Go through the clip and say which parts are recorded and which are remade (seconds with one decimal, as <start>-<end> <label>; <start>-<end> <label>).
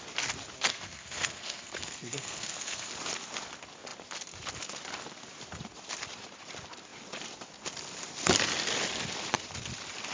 0.0-0.7 recorded; 0.7-2.9 remade; 2.9-10.1 recorded